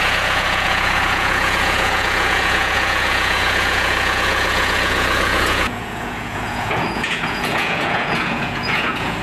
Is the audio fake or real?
fake